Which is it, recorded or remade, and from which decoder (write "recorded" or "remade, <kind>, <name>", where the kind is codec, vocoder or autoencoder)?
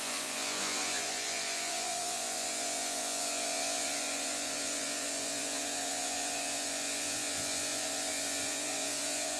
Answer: remade, vocoder, Vocos